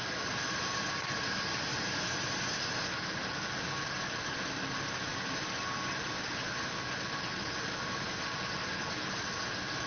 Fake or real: real